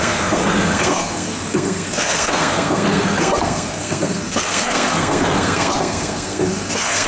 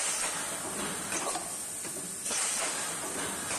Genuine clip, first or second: second